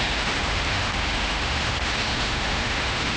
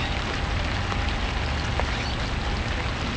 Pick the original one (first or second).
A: second